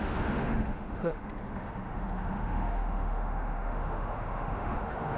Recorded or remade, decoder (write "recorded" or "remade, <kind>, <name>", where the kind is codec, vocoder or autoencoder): remade, autoencoder, DAC-VAE